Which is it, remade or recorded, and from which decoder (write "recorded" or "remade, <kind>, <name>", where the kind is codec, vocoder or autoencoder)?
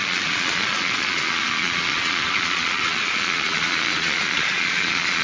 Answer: remade, vocoder, Vocos